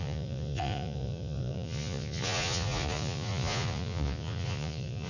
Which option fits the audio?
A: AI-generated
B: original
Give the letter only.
A